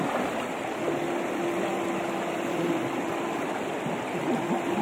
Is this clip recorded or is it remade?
recorded